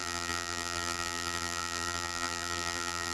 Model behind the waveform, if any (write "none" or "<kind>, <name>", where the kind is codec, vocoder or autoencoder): vocoder, BigVGAN v2